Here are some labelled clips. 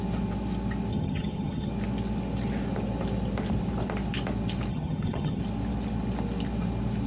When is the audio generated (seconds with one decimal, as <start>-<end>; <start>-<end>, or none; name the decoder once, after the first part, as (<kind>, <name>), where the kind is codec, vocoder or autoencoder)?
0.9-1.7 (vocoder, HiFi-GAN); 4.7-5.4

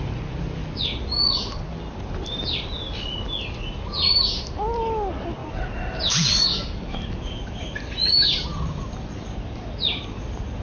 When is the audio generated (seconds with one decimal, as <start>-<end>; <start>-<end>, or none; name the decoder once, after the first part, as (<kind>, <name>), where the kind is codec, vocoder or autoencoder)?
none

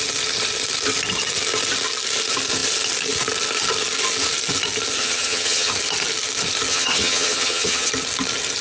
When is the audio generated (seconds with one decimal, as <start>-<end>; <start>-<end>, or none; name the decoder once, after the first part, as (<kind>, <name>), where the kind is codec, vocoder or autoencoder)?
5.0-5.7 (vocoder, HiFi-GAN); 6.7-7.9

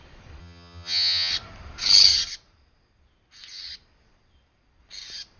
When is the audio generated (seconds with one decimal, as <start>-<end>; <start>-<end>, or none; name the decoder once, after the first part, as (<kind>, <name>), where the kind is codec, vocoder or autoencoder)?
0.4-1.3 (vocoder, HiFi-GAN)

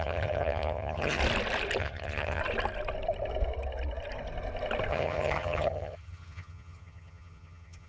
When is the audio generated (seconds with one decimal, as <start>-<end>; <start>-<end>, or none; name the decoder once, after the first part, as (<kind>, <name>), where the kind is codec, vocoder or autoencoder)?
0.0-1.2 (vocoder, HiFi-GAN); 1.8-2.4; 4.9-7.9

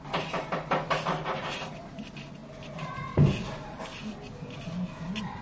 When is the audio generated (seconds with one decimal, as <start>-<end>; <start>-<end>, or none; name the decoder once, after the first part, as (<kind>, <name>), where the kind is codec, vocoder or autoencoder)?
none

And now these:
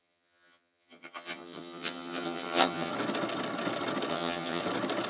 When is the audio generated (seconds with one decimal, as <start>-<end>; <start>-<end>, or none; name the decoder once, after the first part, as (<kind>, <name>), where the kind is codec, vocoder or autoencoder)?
0.0-2.9 (vocoder, HiFi-GAN); 4.1-4.6

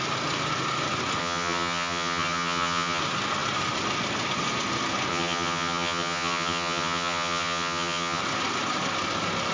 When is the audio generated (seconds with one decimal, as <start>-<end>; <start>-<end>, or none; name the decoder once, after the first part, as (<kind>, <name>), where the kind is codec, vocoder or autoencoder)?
1.2-3.0 (vocoder, HiFi-GAN); 5.1-8.2